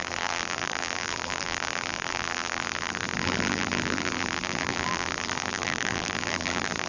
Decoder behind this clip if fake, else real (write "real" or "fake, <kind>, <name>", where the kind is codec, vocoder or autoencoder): fake, vocoder, BigVGAN v2